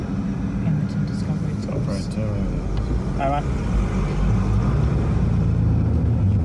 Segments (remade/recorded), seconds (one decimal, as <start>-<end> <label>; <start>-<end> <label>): 0.0-6.4 recorded